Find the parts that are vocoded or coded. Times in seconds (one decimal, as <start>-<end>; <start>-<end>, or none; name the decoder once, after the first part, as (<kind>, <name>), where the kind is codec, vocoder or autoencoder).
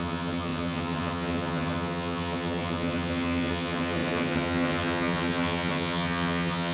0.0-6.7 (vocoder, HiFi-GAN)